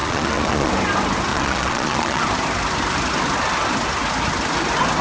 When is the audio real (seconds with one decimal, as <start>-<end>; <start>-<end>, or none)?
0.7-1.3; 2.2-5.0